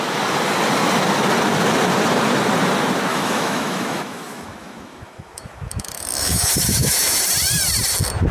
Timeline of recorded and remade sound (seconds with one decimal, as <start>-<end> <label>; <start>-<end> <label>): 0.0-3.1 recorded; 3.1-7.2 remade; 7.2-8.3 recorded